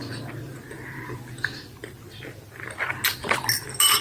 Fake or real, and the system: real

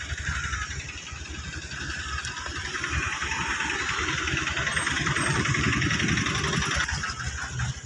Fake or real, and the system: real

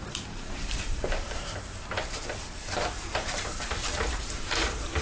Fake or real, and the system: fake, vocoder, BigVGAN v2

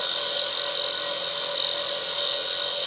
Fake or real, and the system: real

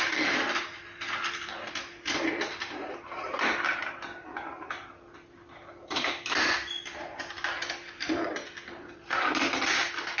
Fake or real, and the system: real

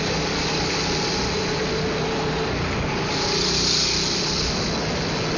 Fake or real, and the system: real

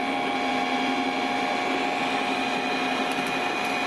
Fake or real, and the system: real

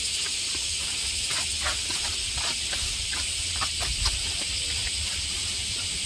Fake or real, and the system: real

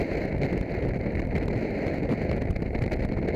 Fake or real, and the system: real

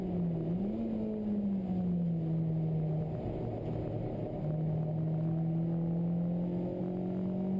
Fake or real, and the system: real